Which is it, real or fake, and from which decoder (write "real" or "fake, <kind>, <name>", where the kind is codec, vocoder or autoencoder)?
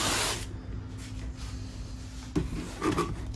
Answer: real